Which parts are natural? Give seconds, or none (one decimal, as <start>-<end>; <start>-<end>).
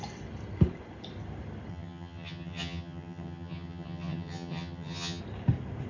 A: 0.0-1.7; 5.2-5.9